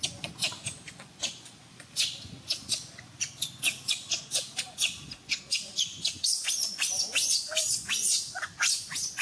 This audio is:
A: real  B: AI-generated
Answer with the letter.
B